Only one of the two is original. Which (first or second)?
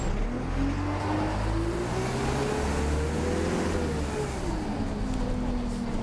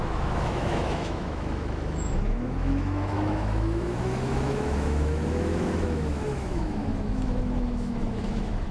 first